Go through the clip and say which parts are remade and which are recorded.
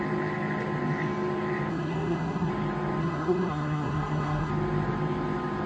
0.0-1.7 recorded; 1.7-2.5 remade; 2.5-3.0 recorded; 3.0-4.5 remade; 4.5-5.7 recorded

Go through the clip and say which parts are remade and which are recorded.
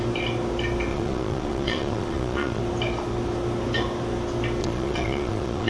0.0-0.9 recorded; 0.9-2.6 remade; 2.6-4.6 recorded; 4.6-5.7 remade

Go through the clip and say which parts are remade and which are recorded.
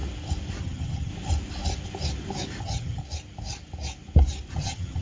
0.0-0.6 recorded; 0.6-1.1 remade; 1.1-2.6 recorded; 2.6-3.0 remade; 3.0-4.5 recorded; 4.5-5.0 remade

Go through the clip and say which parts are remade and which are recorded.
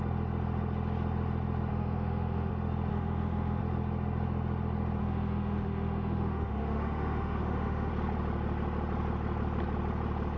0.0-1.7 recorded; 1.7-2.5 remade; 2.5-2.9 recorded; 2.9-3.6 remade; 3.6-5.0 recorded; 5.0-7.9 remade; 7.9-10.4 recorded